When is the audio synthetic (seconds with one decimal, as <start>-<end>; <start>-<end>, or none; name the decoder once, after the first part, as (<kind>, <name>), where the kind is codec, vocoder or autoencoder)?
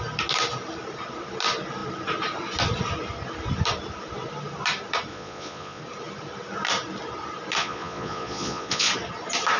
5.1-5.8 (vocoder, Vocos); 7.6-8.9